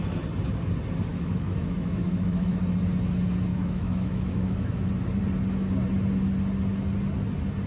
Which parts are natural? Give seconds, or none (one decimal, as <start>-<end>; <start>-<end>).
0.0-1.1; 2.6-3.5; 4.9-7.7